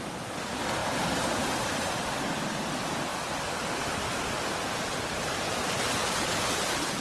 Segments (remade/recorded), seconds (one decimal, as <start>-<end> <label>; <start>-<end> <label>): 0.0-7.0 recorded